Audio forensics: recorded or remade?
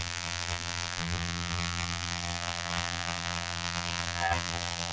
remade